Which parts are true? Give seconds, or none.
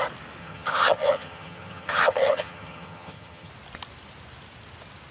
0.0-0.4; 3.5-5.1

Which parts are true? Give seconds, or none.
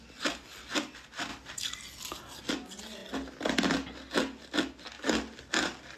0.0-6.0